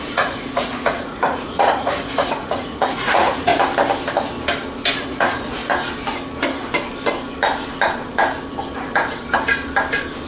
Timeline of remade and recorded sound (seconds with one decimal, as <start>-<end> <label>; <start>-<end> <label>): 0.0-3.5 remade; 3.5-5.0 recorded; 5.0-5.6 remade; 5.6-10.3 recorded